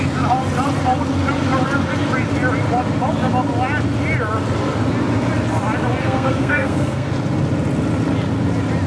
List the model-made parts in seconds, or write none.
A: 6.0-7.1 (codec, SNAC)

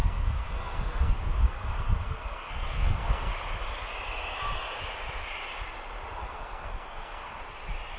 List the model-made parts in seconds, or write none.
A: 0.0-3.3 (codec, SNAC); 6.2-7.4

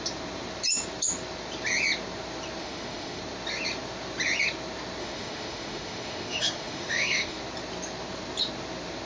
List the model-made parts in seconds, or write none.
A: 2.6-3.2 (autoencoder, DAC-VAE); 5.0-7.4

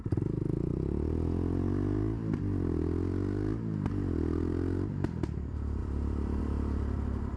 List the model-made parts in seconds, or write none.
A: 0.0-0.7 (vocoder, BigVGAN v2); 4.9-7.4

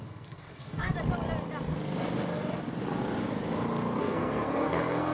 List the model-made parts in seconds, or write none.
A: 0.0-0.9 (codec, SNAC); 4.0-5.1

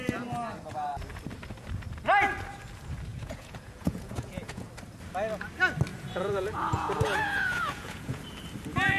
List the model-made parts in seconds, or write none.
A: 3.1-4.7 (vocoder, Vocos); 5.9-8.2

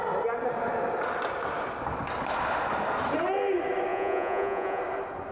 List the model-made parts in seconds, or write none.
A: 3.9-4.8 (vocoder, Vocos)